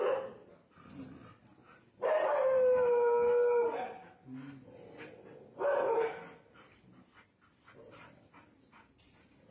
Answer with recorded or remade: recorded